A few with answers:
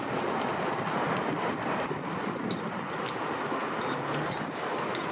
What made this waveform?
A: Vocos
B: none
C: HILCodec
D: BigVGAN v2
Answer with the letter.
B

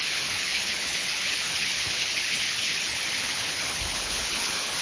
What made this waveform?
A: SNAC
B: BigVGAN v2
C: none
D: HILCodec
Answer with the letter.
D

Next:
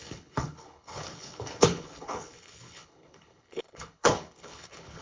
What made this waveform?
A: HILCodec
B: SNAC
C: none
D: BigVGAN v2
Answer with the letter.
A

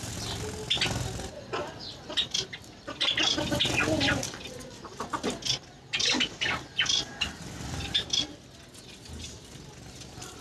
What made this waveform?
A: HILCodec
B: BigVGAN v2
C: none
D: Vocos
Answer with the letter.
C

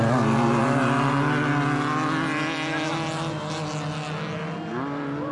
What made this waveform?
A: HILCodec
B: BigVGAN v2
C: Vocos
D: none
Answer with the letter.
D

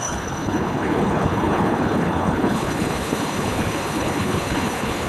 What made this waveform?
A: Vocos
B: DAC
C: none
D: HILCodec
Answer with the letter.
D